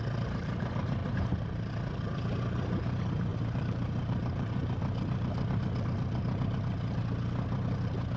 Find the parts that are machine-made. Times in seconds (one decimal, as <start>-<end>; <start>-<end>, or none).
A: 1.0-1.7; 3.3-4.8